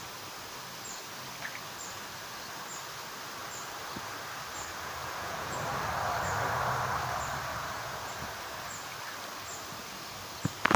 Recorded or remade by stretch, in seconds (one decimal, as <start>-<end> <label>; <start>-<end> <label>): 0.0-5.0 recorded; 5.0-5.5 remade; 5.5-7.5 recorded; 7.5-8.1 remade; 8.1-10.8 recorded

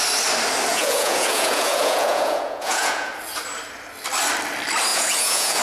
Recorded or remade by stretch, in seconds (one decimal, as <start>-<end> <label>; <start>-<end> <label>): 0.0-0.7 recorded; 0.7-3.1 remade; 3.1-4.9 recorded; 4.9-5.6 remade

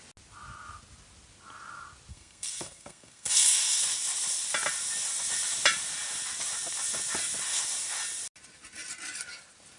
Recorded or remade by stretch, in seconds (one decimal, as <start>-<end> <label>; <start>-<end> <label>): 0.0-2.1 recorded; 2.1-3.8 remade; 3.8-9.8 recorded

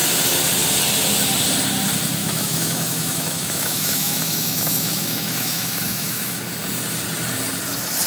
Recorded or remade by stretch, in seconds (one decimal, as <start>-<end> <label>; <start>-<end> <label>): 0.0-2.2 recorded; 2.2-6.4 remade; 6.4-8.1 recorded